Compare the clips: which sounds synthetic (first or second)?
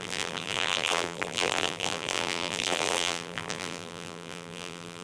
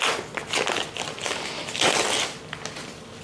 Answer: first